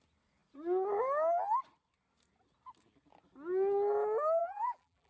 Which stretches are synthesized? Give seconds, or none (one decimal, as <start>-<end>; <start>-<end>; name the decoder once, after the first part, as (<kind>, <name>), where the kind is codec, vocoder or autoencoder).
4.4-5.1 (vocoder, BigVGAN v2)